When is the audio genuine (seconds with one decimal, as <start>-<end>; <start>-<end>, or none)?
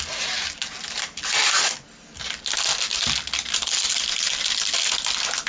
0.0-5.5